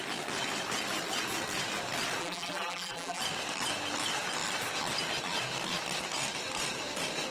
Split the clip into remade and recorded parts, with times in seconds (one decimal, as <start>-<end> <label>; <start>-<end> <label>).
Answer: 0.0-2.2 recorded; 2.2-3.2 remade; 3.2-7.3 recorded